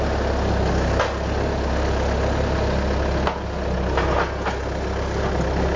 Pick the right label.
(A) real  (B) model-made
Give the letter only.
A